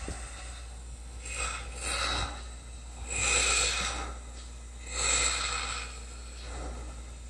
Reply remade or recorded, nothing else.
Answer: recorded